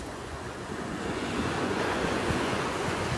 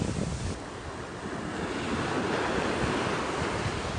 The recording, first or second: second